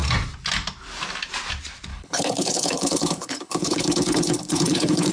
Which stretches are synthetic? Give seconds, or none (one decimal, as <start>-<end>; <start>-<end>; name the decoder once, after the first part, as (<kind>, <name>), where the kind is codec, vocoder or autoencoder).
1.9-5.1 (codec, HILCodec)